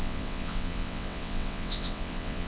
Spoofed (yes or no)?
yes